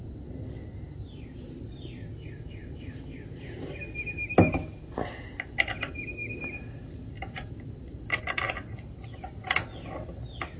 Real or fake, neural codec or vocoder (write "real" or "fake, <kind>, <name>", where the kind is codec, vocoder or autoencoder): real